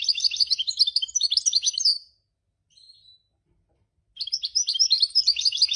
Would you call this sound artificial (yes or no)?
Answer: no